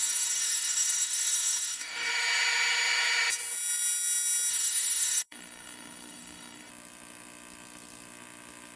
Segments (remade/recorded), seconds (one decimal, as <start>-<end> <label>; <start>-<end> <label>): 0.0-2.1 remade; 2.1-4.5 recorded; 4.5-6.7 remade; 6.7-8.8 recorded